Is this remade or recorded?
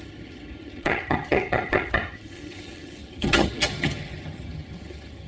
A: remade